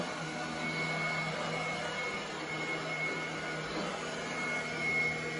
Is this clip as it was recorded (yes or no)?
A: yes